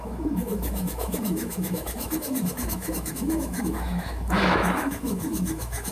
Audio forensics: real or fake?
fake